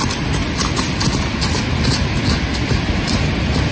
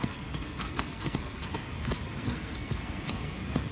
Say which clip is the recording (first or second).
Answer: first